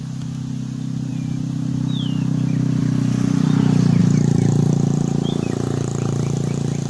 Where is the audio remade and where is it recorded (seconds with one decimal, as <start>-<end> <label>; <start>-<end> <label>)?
0.0-1.1 recorded; 1.1-1.7 remade; 1.7-4.0 recorded; 4.0-6.9 remade